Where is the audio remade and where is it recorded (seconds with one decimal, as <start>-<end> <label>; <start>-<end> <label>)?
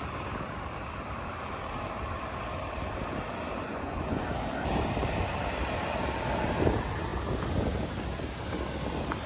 0.0-3.7 recorded; 3.7-4.2 remade; 4.2-9.3 recorded